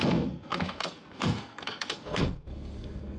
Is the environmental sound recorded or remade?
remade